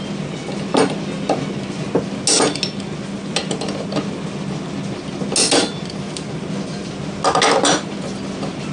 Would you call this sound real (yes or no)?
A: yes